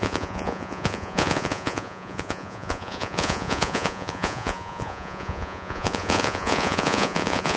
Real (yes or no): no